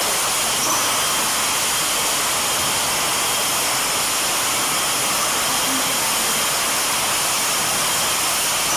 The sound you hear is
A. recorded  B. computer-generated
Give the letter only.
A